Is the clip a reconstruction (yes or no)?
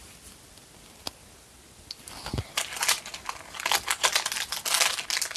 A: no